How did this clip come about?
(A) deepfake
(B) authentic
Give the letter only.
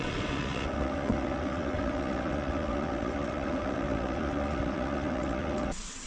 A